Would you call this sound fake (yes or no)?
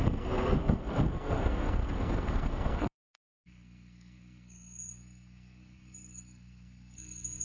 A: yes